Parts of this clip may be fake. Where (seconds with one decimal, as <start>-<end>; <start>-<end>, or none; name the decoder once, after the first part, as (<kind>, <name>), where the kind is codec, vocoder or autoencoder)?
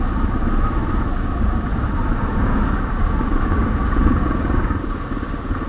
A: 2.1-4.7 (codec, DAC)